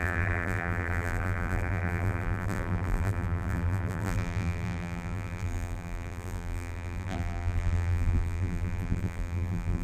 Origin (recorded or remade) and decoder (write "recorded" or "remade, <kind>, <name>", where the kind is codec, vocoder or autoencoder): remade, vocoder, BigVGAN v2